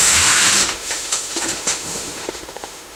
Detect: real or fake fake